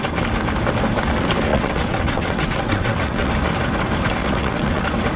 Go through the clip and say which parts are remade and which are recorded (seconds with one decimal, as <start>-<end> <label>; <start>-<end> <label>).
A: 0.0-1.5 recorded; 1.5-3.3 remade; 3.3-4.2 recorded; 4.2-4.8 remade; 4.8-5.2 recorded

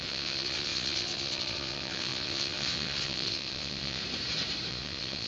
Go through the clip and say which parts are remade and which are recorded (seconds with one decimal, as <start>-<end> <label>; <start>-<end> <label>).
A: 0.0-4.0 remade; 4.0-4.7 recorded; 4.7-5.3 remade

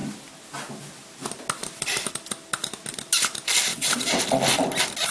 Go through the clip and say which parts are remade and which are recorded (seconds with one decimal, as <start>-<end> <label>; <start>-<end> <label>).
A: 0.0-3.7 recorded; 3.7-4.2 remade; 4.2-5.1 recorded

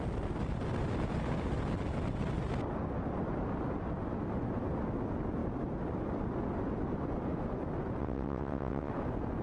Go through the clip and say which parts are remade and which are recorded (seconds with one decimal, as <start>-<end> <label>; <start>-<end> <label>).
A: 0.0-8.0 recorded; 8.0-8.9 remade; 8.9-9.4 recorded

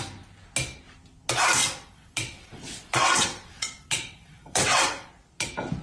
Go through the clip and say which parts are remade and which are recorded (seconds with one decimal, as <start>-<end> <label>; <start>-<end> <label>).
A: 0.0-1.6 recorded; 1.6-5.1 remade; 5.1-5.8 recorded

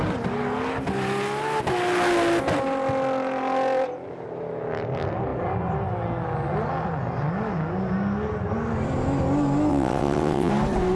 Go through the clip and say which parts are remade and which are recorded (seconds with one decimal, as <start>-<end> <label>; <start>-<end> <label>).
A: 0.0-9.7 recorded; 9.7-10.5 remade; 10.5-11.0 recorded

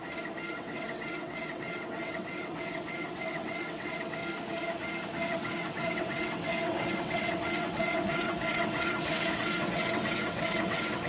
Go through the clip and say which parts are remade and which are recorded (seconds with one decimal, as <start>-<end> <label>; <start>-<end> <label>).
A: 0.0-0.5 recorded; 0.5-4.2 remade; 4.2-5.3 recorded; 5.3-11.1 remade